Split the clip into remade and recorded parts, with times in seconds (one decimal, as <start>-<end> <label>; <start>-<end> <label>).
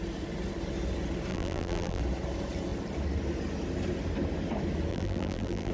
0.0-1.3 recorded; 1.3-2.0 remade; 2.0-4.9 recorded; 4.9-5.7 remade